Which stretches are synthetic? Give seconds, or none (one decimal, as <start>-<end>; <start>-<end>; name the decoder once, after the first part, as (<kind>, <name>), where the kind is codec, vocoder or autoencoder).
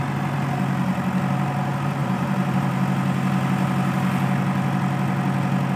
2.0-2.8 (vocoder, BigVGAN v2)